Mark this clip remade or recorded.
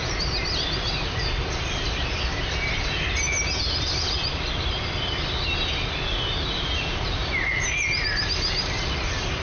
recorded